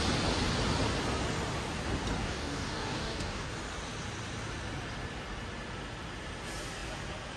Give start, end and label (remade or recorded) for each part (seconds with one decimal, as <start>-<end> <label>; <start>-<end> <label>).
0.0-2.2 recorded; 2.2-3.5 remade; 3.5-7.4 recorded